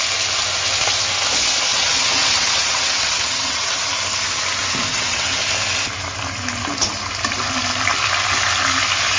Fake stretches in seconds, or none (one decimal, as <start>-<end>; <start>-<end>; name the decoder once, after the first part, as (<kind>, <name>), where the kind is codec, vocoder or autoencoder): 1.7-3.8 (vocoder, WaveNeXt); 4.9-5.4